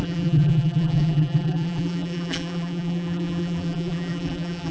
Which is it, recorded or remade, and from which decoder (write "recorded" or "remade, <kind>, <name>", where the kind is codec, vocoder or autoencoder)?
remade, vocoder, BigVGAN v2